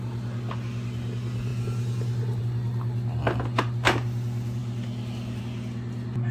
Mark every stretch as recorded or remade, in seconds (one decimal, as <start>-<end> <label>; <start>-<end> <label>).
0.0-6.3 recorded